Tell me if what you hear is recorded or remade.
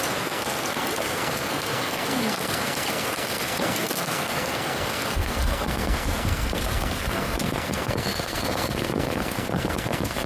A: remade